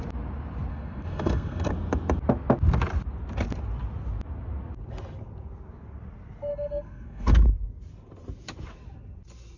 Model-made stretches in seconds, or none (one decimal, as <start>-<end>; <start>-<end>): 0.7-1.7; 6.5-7.4